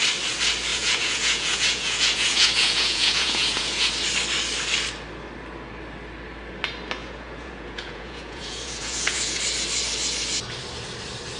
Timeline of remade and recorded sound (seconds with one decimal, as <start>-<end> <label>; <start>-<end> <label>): 0.0-0.7 recorded; 0.7-3.9 remade; 3.9-7.0 recorded; 7.0-9.4 remade; 9.4-11.4 recorded